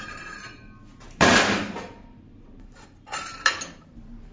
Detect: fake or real fake